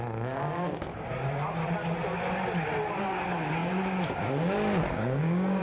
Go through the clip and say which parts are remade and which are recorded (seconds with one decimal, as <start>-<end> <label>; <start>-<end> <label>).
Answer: 0.0-1.6 remade; 1.6-3.0 recorded; 3.0-5.6 remade